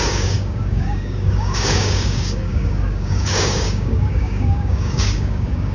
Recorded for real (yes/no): no